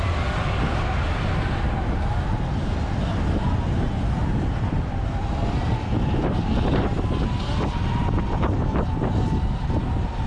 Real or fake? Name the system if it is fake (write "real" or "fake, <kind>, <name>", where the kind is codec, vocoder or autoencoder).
real